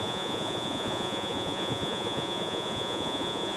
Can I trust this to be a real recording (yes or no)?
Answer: no